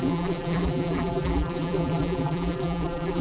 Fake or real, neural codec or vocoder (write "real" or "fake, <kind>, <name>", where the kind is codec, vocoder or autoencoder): fake, vocoder, BigVGAN v2